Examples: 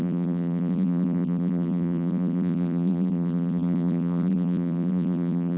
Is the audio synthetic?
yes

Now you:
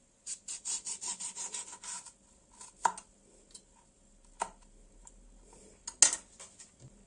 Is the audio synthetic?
no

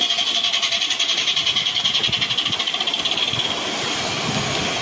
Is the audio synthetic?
no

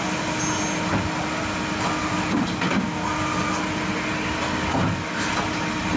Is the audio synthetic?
no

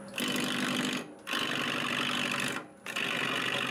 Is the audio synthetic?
no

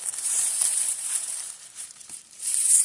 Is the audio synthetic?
yes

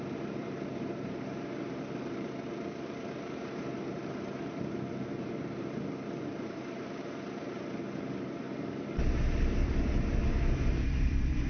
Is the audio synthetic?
yes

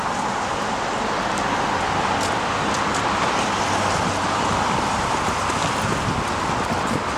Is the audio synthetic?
no